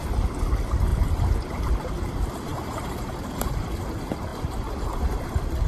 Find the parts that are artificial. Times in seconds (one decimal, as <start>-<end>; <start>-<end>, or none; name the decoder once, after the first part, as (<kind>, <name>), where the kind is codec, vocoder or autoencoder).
2.5-3.6 (vocoder, BigVGAN v2)